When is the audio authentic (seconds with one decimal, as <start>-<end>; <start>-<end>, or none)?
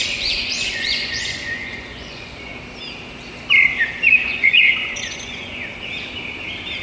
2.5-4.1; 5.7-6.8